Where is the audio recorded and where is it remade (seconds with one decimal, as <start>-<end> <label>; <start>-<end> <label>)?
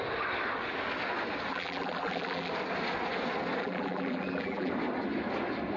0.0-1.5 recorded; 1.5-2.5 remade; 2.5-3.6 recorded; 3.6-4.7 remade; 4.7-5.8 recorded